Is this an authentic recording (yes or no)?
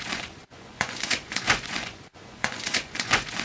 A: no